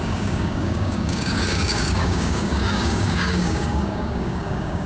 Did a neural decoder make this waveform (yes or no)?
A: yes